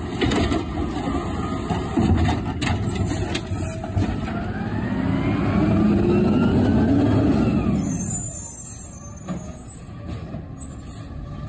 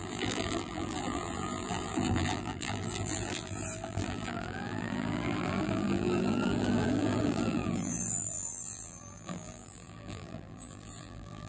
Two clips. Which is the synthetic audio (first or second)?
second